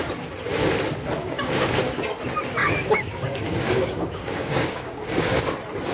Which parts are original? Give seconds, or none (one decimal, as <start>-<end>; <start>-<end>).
0.0-1.2; 1.8-2.6; 5.4-5.9